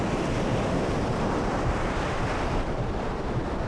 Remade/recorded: recorded